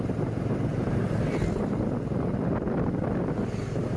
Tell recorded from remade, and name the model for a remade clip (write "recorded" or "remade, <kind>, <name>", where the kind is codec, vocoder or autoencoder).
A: recorded